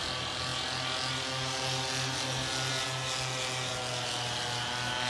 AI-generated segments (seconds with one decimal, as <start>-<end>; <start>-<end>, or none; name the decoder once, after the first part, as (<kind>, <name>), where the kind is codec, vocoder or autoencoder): none